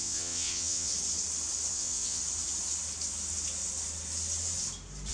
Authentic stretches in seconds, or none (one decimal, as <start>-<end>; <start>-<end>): 0.9-1.7; 2.2-5.1